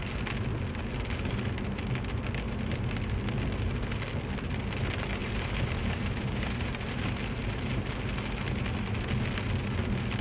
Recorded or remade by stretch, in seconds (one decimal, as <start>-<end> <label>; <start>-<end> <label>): 0.0-5.2 recorded; 5.2-7.1 remade; 7.1-10.2 recorded